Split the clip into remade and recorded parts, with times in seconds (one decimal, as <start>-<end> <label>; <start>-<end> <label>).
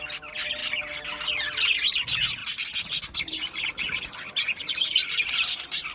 0.0-0.6 remade; 0.6-1.9 recorded; 1.9-2.4 remade; 2.4-4.1 recorded; 4.1-5.9 remade